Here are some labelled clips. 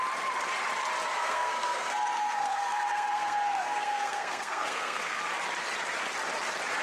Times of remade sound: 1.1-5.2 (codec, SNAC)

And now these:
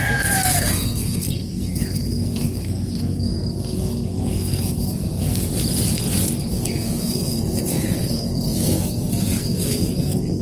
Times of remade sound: 0.0-5.5 (codec, SNAC); 6.5-10.4

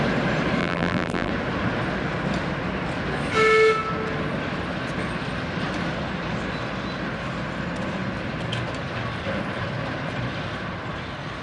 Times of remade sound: 0.6-1.3 (vocoder, BigVGAN v2)

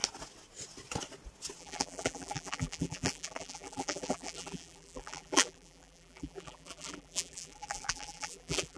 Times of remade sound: 1.6-8.8 (vocoder, BigVGAN v2)

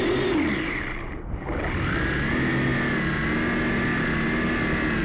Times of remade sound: none

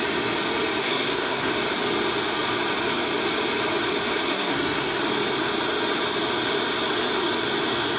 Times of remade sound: 0.8-1.5 (codec, SNAC); 4.3-5.0